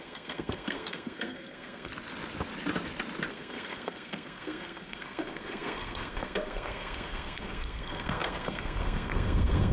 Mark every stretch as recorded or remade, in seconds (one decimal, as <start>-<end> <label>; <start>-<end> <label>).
0.0-1.9 remade; 1.9-3.3 recorded; 3.3-9.7 remade